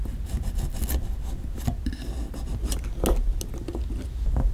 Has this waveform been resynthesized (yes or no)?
no